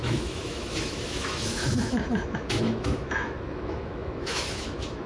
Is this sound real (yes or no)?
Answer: no